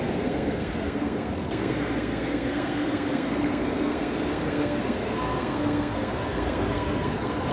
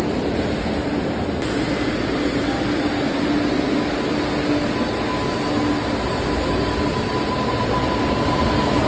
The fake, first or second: first